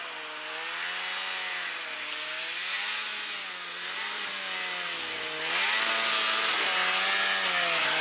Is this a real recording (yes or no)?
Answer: yes